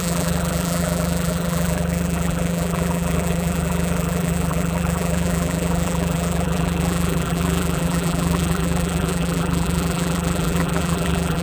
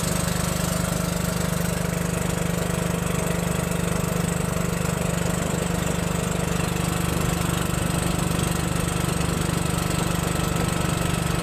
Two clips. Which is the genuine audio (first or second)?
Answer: second